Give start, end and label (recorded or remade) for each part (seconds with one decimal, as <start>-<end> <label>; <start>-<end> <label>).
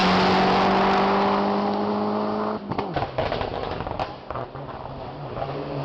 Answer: 0.0-5.8 recorded